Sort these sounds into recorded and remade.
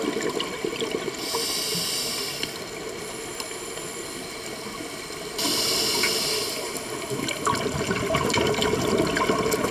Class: recorded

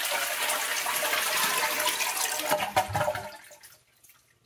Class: recorded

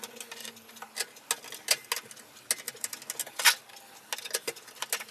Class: recorded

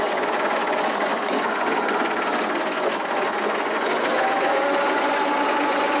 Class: remade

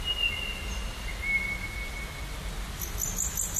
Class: recorded